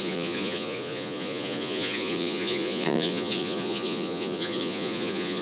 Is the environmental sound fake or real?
fake